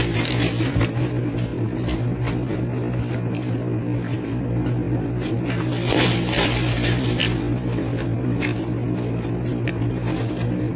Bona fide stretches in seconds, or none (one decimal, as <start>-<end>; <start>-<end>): 0.0-10.8